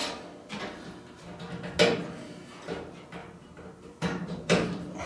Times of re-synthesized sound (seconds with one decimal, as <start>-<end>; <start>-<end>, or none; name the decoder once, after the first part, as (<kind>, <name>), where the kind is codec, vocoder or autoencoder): 3.2-5.1 (vocoder, BigVGAN v2)